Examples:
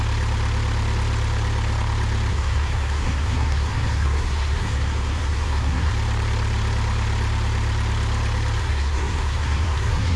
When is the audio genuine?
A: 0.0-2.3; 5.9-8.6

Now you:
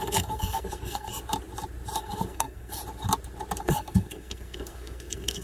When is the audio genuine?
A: 1.1-2.0; 2.8-3.6

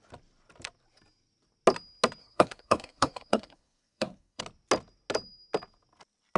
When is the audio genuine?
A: 0.0-2.2; 4.4-6.4

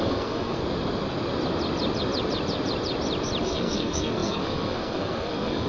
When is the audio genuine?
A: 0.6-3.4

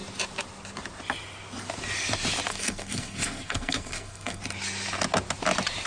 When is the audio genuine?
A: 0.0-2.5; 4.4-5.9